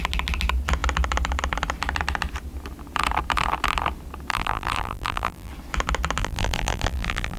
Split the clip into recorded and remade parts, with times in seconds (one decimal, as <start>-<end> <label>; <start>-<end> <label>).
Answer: 0.0-4.3 recorded; 4.3-5.5 remade; 5.5-6.2 recorded; 6.2-7.4 remade